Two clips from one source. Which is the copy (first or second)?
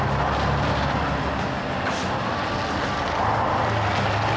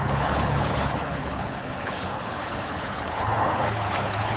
second